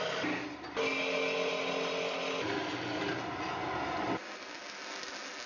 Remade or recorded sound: recorded